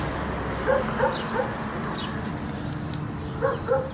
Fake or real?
fake